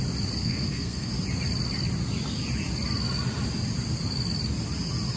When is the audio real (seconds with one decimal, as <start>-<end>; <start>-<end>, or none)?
0.0-0.4; 1.1-5.2